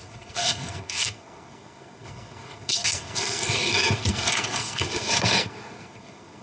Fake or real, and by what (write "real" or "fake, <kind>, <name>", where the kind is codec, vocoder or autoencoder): fake, codec, SNAC